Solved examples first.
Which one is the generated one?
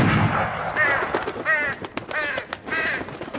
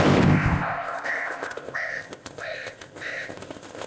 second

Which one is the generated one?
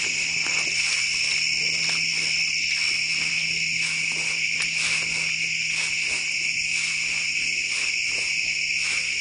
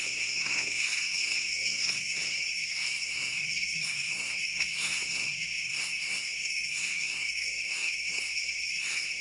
second